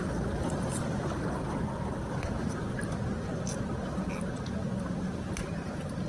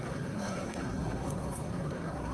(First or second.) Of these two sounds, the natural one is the first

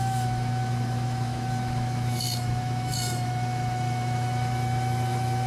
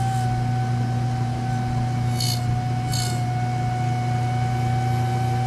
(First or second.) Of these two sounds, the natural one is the second